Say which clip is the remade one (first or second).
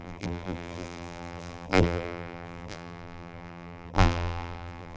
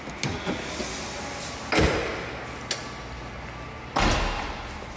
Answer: first